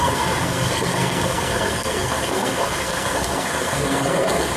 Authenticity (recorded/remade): remade